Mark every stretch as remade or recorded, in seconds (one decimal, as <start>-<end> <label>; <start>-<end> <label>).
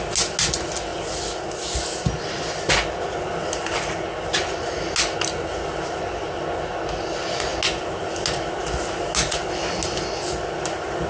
0.0-11.1 recorded